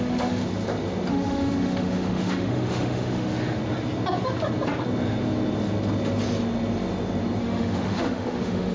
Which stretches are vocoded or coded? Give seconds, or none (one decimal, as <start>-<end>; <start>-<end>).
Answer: 0.0-0.4; 1.1-3.6; 7.4-8.7